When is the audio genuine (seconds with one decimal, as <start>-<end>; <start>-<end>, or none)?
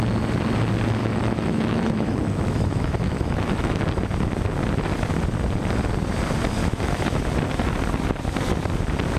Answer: 0.0-1.0; 3.8-6.6; 7.2-9.2